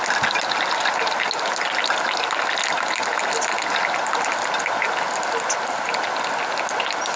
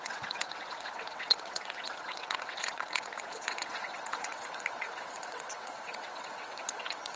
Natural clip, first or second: first